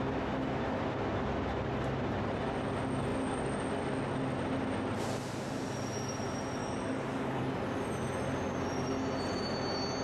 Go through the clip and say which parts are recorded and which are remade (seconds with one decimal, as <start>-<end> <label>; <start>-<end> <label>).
0.0-6.6 recorded; 6.6-7.4 remade; 7.4-10.0 recorded